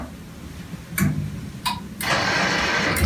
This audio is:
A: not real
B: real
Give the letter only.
B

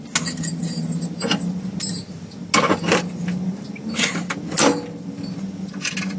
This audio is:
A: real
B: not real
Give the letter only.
A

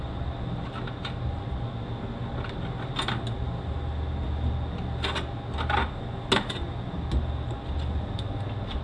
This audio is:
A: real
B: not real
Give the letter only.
A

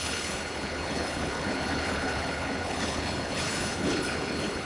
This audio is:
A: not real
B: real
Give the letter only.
A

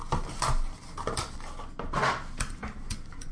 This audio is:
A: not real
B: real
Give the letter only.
B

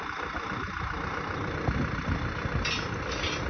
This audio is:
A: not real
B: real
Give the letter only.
B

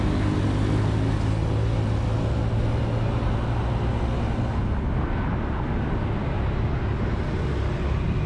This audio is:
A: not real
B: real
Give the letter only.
B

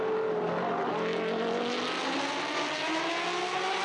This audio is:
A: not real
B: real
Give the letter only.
B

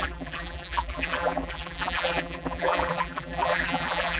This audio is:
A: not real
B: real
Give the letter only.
A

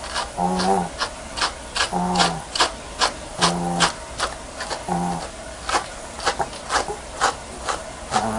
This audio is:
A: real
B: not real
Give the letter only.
A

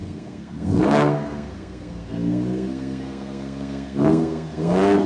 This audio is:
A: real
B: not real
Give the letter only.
B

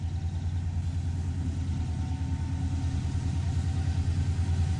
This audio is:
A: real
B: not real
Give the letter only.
A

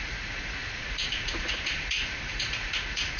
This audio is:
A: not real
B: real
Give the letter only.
A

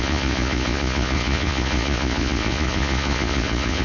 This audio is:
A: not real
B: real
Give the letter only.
A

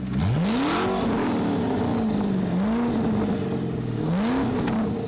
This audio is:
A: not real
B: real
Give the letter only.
B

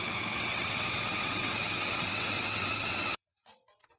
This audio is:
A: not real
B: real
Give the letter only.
A